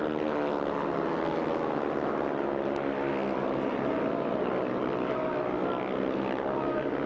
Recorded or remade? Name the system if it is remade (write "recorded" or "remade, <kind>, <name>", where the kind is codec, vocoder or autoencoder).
recorded